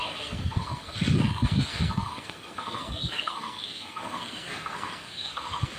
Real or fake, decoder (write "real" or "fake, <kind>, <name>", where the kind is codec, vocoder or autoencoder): fake, codec, SNAC